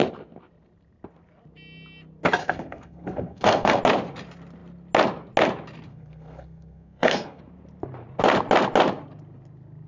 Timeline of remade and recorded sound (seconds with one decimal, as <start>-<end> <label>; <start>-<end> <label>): 0.0-2.4 recorded; 2.4-3.8 remade; 3.8-5.9 recorded; 5.9-7.4 remade; 7.4-9.9 recorded